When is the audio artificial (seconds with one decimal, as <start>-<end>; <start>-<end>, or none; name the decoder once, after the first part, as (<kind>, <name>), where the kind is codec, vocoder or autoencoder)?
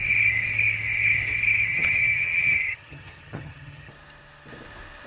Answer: 1.7-3.9 (vocoder, HiFi-GAN)